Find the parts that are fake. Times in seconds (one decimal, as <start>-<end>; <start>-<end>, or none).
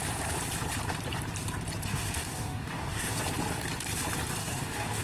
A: 1.9-3.2; 4.4-5.0